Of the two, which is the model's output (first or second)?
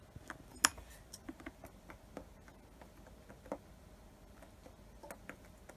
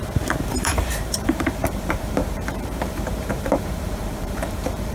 second